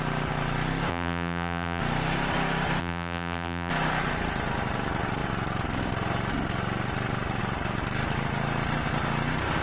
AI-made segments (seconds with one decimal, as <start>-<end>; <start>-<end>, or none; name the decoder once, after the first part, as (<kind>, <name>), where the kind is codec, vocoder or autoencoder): 0.9-1.8 (vocoder, BigVGAN v2); 2.8-3.7